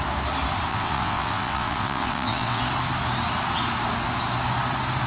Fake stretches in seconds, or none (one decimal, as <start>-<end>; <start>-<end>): 0.7-2.6